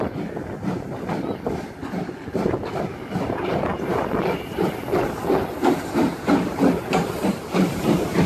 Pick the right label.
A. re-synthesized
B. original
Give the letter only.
B